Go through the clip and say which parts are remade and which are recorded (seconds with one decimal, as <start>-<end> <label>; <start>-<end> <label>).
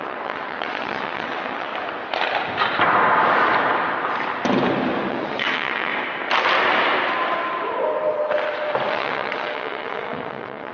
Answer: 0.0-1.7 remade; 1.7-5.1 recorded; 5.1-5.9 remade; 5.9-8.9 recorded; 8.9-10.7 remade